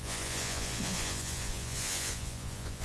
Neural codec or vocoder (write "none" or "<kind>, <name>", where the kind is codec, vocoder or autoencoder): vocoder, Vocos